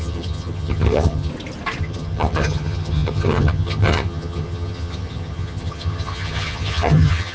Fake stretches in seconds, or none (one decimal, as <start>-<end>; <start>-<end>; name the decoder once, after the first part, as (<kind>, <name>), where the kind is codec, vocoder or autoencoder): 0.0-1.3 (vocoder, HiFi-GAN); 1.8-7.3